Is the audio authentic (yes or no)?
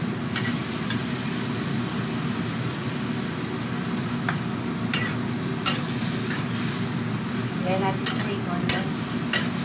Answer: yes